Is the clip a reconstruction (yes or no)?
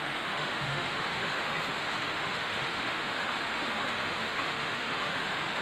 yes